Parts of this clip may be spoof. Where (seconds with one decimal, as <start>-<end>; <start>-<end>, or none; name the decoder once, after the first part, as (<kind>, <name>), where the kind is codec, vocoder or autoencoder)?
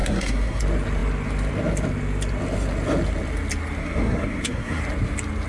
0.0-0.6 (codec, SNAC); 3.8-4.8